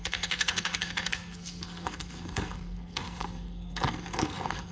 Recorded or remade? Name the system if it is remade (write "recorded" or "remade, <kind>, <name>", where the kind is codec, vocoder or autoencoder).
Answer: remade, codec, SNAC